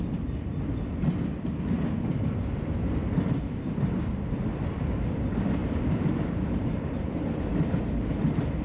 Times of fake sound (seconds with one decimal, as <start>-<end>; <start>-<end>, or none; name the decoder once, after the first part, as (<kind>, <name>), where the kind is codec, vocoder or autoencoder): 0.0-8.6 (vocoder, BigVGAN v2)

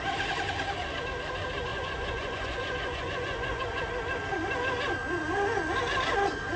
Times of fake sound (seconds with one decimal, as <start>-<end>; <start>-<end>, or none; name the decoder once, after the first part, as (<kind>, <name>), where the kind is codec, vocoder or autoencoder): 1.7-3.8 (vocoder, Vocos)

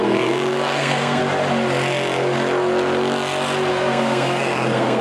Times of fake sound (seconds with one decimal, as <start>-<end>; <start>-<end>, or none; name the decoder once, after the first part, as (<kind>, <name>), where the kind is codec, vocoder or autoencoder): 0.0-1.2 (codec, SNAC); 3.7-5.0

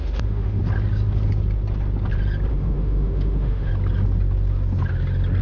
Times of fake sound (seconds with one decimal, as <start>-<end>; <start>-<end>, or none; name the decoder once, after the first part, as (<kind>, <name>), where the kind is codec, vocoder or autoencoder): 0.0-0.6 (autoencoder, DAC-VAE); 2.5-3.7

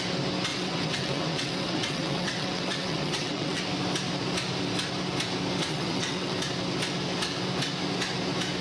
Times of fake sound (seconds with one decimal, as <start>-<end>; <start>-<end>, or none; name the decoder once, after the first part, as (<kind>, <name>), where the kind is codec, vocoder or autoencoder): 0.5-3.6 (vocoder, WaveNeXt); 5.6-6.3

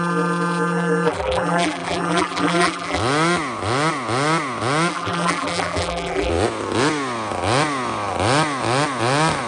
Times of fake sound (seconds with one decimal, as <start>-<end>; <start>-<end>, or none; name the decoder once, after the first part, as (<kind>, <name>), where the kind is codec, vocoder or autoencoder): 0.0-3.0 (vocoder, BigVGAN v2); 4.9-6.3